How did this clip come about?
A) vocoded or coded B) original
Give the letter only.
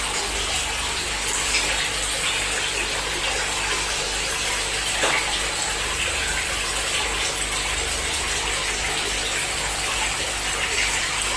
B